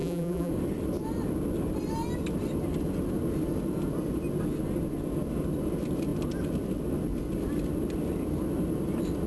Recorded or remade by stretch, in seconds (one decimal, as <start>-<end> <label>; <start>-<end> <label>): 0.0-0.5 remade; 0.5-9.3 recorded